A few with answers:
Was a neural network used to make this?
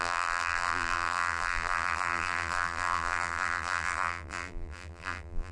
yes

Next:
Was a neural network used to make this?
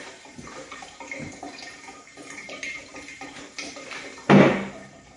yes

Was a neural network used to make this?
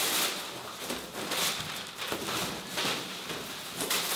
no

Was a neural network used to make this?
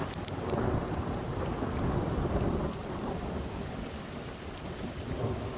yes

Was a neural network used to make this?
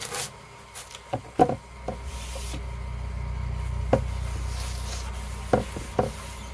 no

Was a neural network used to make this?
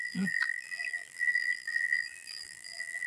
yes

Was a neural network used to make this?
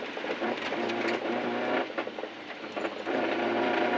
yes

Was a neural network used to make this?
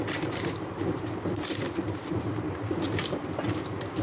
yes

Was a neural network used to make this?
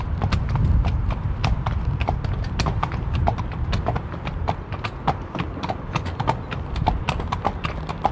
yes